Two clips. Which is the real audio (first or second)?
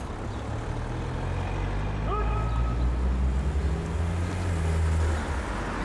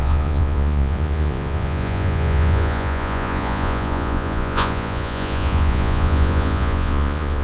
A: first